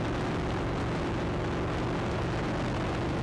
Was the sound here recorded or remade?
recorded